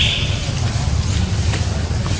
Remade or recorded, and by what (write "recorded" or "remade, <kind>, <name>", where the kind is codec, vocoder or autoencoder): recorded